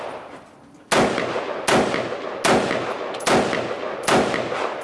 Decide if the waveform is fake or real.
real